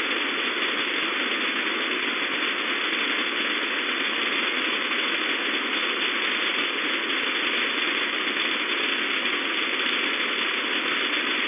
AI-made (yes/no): no